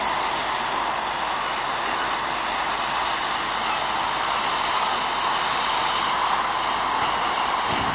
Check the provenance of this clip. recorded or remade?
recorded